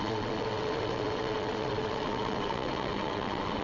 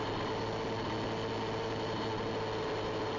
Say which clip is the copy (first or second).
first